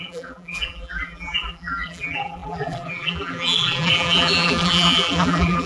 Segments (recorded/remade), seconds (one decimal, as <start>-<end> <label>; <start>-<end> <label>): 0.0-5.7 remade